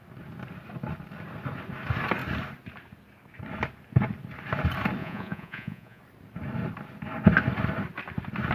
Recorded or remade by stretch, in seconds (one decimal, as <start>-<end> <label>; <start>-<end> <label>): 0.0-5.0 recorded; 5.0-6.0 remade; 6.0-8.5 recorded